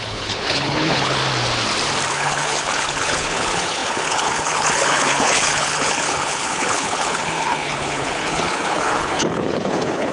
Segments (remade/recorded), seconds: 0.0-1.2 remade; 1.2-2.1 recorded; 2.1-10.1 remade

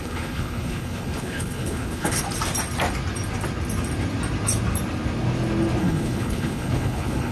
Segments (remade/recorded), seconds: 0.0-2.2 remade; 2.2-5.8 recorded; 5.8-7.3 remade

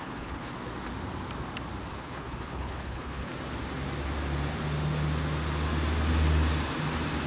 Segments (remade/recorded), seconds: 0.0-0.5 remade; 0.5-1.9 recorded; 1.9-3.3 remade; 3.3-7.3 recorded

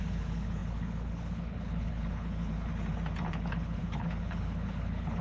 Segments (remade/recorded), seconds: 0.0-2.7 remade; 2.7-3.3 recorded; 3.3-5.2 remade

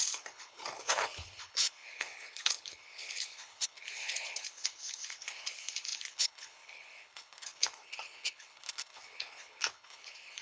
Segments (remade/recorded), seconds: 0.0-10.4 remade

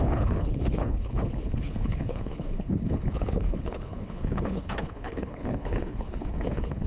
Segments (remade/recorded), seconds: 0.0-6.9 remade

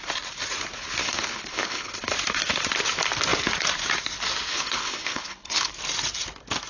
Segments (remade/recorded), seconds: 0.0-1.0 recorded; 1.0-1.9 remade; 1.9-4.5 recorded; 4.5-5.7 remade; 5.7-6.7 recorded